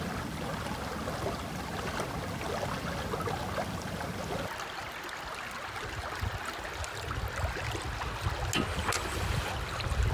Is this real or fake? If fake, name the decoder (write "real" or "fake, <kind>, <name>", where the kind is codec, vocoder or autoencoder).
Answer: real